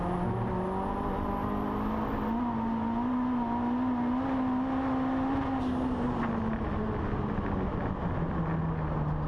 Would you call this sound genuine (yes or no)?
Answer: yes